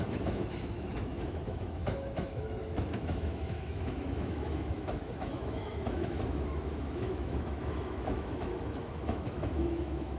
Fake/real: fake